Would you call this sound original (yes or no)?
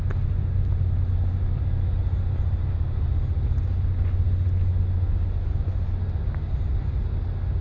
yes